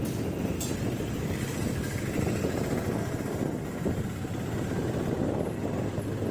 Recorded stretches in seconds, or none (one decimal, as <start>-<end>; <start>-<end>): 0.0-6.3